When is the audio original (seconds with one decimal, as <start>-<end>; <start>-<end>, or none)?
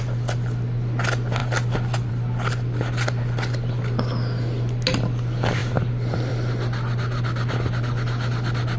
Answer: 0.0-8.8